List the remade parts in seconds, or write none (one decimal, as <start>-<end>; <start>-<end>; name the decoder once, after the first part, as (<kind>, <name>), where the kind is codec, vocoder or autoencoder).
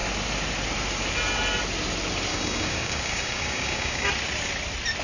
2.3-4.1 (codec, DAC)